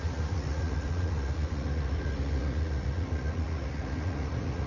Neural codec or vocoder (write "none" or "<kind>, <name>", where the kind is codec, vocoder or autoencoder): vocoder, Vocos